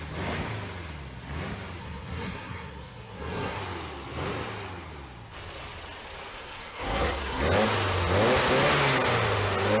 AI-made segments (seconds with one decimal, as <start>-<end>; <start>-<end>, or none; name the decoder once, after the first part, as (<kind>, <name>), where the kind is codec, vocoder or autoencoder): 1.8-3.6 (codec, SNAC); 6.3-7.4